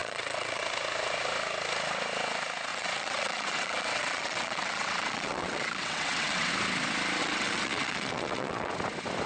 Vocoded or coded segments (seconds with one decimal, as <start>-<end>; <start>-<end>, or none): 0.0-0.6; 2.7-6.5; 7.2-8.7